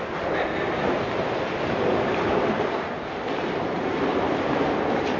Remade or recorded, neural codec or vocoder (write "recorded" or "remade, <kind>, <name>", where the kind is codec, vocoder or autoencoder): recorded